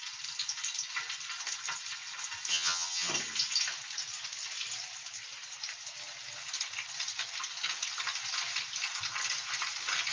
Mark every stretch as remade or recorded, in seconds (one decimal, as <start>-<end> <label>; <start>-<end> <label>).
0.0-2.5 recorded; 2.5-3.1 remade; 3.1-10.1 recorded